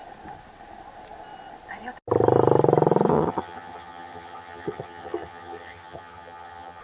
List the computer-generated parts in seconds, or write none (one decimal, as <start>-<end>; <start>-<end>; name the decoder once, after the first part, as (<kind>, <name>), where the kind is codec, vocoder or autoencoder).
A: 3.1-6.8 (vocoder, HiFi-GAN)